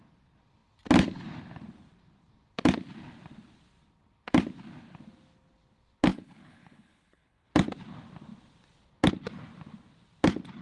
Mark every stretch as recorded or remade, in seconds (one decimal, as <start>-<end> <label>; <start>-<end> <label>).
0.0-6.1 recorded; 6.1-7.5 remade; 7.5-10.6 recorded